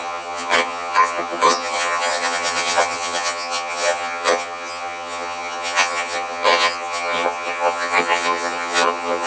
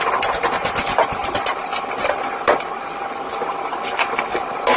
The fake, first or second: first